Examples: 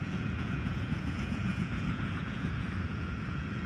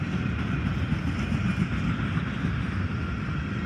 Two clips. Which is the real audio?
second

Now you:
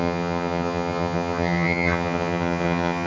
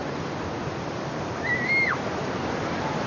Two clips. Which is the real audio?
second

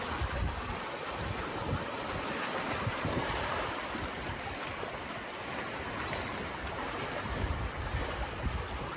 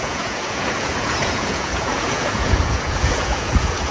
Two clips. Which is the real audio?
first